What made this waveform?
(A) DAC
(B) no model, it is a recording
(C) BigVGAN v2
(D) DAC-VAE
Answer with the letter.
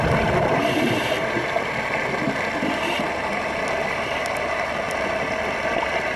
C